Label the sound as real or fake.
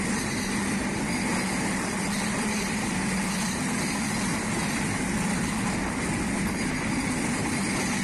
real